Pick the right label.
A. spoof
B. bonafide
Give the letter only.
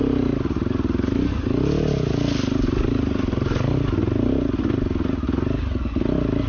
B